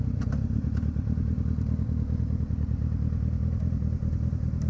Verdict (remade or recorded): recorded